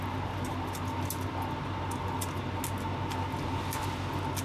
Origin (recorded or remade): recorded